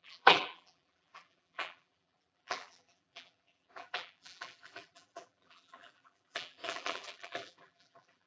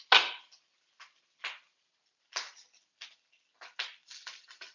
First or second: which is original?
second